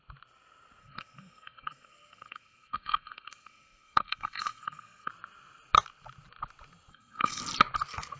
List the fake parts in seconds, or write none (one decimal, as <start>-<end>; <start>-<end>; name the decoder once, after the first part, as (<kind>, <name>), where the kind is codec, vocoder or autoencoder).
0.8-5.1 (codec, SNAC); 6.9-7.4